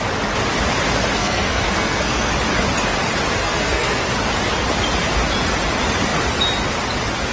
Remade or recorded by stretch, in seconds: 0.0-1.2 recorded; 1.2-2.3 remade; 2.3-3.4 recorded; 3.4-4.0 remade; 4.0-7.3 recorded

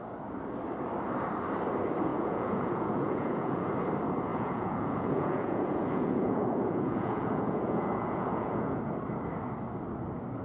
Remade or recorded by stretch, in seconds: 0.0-2.1 recorded; 2.1-3.7 remade; 3.7-4.3 recorded; 4.3-8.8 remade; 8.8-10.4 recorded

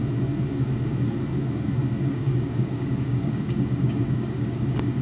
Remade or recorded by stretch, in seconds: 0.0-2.1 recorded; 2.1-5.0 remade